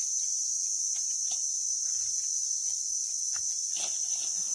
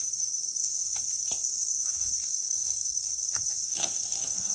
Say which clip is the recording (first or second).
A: first